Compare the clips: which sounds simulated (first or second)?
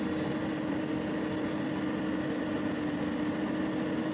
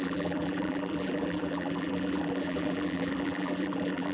second